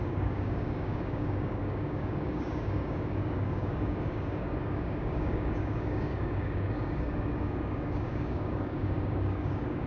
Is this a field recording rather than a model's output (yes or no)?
no